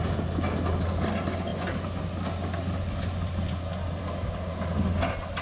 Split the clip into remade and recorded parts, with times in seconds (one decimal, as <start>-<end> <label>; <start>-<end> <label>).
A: 0.0-5.4 recorded